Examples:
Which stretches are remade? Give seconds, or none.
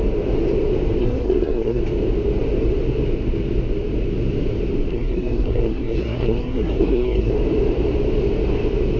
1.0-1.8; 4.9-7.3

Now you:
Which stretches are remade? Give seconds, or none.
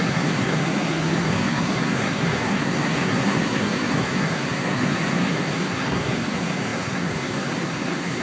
0.0-8.2